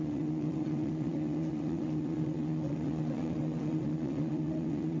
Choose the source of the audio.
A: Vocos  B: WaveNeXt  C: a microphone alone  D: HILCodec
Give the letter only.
B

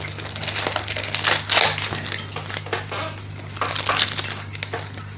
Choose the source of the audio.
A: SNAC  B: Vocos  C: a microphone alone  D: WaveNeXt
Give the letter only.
C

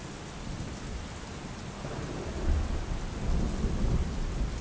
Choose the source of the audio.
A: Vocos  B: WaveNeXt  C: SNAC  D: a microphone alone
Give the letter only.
D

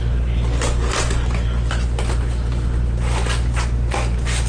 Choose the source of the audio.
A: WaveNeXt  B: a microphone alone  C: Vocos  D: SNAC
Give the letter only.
B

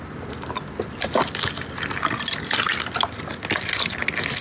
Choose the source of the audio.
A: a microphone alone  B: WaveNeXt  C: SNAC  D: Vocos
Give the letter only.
A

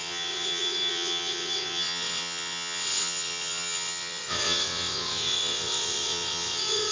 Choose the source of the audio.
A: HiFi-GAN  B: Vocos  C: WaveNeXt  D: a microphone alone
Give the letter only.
C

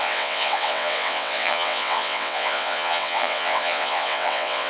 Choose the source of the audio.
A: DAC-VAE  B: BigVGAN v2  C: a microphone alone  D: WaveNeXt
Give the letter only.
D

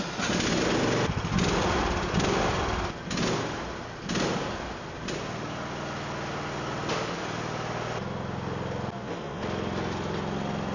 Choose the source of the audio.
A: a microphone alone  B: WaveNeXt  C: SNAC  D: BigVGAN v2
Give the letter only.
A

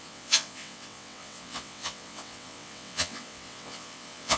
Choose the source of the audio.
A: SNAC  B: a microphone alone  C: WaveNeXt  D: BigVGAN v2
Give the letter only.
C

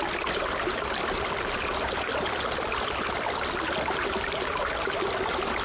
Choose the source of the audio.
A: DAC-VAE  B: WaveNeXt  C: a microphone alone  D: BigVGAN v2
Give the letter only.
C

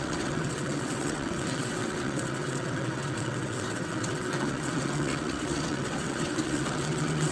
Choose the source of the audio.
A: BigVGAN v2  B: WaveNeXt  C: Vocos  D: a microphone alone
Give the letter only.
B